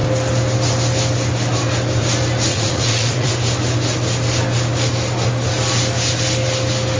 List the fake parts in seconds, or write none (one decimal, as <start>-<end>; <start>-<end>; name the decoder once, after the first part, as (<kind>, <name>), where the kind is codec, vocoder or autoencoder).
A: 2.5-3.3 (vocoder, Vocos)